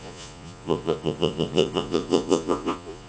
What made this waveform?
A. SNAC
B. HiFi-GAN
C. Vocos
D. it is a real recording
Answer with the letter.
C